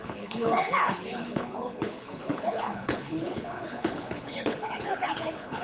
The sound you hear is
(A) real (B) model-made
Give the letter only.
B